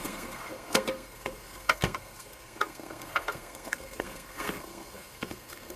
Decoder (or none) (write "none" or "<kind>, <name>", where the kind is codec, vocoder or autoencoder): codec, SNAC